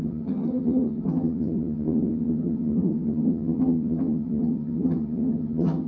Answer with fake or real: fake